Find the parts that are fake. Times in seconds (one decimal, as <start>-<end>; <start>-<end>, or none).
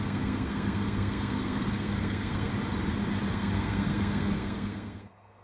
0.0-2.5; 3.3-5.4